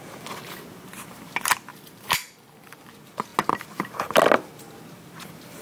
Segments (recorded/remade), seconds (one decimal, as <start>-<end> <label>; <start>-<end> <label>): 0.0-1.7 recorded; 1.7-2.9 remade; 2.9-5.6 recorded